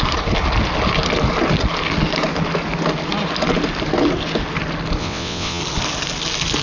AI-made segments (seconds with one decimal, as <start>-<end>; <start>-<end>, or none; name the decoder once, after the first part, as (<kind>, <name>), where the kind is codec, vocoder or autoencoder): 5.0-5.6 (vocoder, WaveNeXt)